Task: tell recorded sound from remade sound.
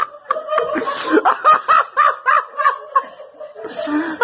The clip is recorded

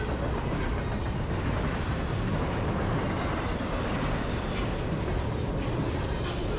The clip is recorded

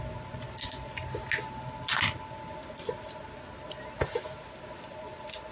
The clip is recorded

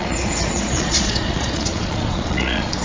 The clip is remade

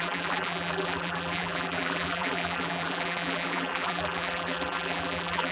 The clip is remade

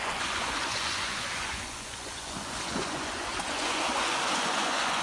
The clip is remade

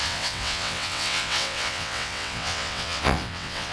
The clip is remade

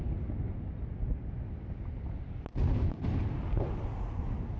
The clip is recorded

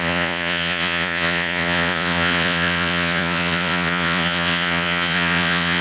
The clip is remade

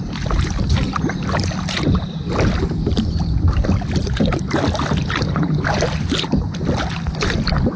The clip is remade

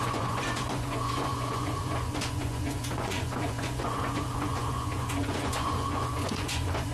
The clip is remade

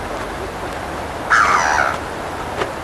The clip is recorded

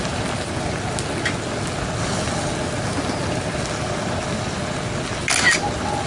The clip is recorded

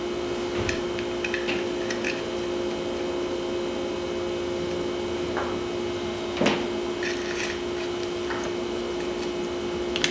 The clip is recorded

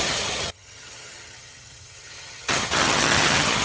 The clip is remade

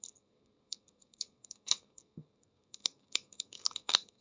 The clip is remade